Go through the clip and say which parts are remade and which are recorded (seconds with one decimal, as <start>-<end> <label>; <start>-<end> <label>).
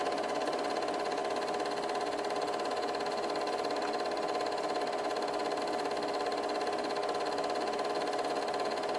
0.0-9.0 recorded